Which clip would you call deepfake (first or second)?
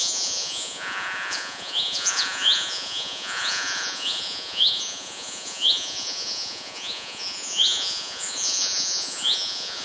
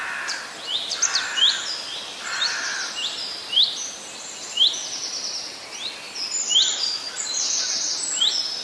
first